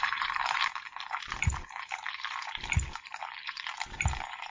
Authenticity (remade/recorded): remade